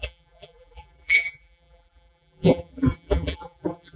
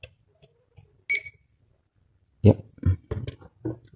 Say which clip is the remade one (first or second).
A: first